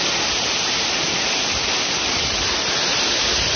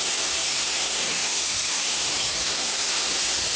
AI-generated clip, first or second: second